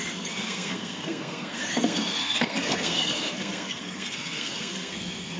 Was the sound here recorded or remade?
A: remade